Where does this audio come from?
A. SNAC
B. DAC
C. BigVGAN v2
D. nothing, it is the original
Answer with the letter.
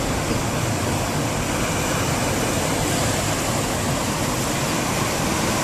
D